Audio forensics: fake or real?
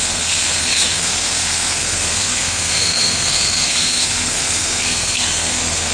fake